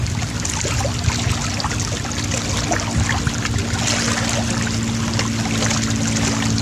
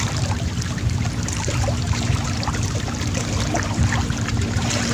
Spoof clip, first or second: second